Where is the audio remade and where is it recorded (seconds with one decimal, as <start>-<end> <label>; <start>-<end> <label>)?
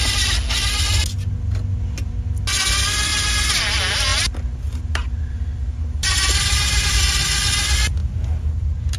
0.0-3.1 recorded; 3.1-3.6 remade; 3.6-4.1 recorded; 4.1-7.0 remade; 7.0-9.0 recorded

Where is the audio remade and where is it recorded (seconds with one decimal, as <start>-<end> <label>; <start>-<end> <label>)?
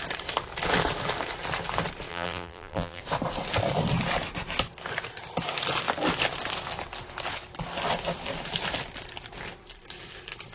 0.0-2.1 recorded; 2.1-3.0 remade; 3.0-10.5 recorded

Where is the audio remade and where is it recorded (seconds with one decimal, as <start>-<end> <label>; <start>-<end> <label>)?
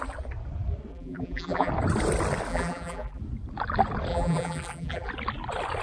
0.0-0.9 recorded; 0.9-1.7 remade; 1.7-2.5 recorded; 2.5-3.2 remade; 3.2-4.1 recorded; 4.1-5.1 remade; 5.1-5.8 recorded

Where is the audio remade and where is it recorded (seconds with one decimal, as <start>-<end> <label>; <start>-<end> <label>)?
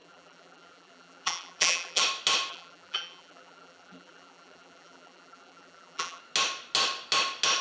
0.0-2.0 remade; 2.0-2.5 recorded; 2.5-6.2 remade; 6.2-7.6 recorded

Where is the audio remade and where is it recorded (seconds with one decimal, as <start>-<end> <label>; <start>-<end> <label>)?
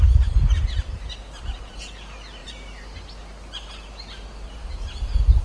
0.0-2.4 recorded; 2.4-2.9 remade; 2.9-4.6 recorded; 4.6-5.4 remade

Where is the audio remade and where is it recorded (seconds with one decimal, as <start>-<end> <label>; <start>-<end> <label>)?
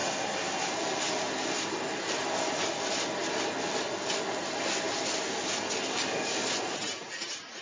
0.0-7.6 recorded